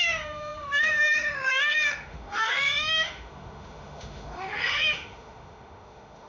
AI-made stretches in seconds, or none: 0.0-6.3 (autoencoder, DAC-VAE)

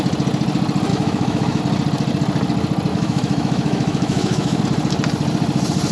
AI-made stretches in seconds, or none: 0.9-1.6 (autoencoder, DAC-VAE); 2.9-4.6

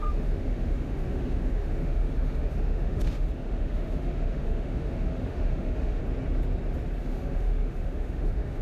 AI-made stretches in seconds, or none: 0.0-6.0 (autoencoder, DAC-VAE); 7.0-8.6

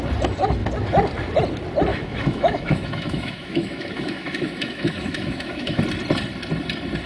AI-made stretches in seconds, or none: 1.9-5.8 (autoencoder, DAC-VAE)

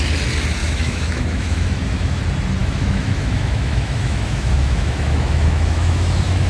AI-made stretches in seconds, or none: 0.6-2.2 (autoencoder, DAC-VAE); 2.6-6.5